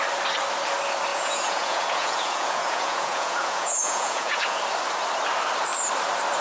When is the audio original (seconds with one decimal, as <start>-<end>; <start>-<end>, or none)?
0.0-1.1; 4.6-6.4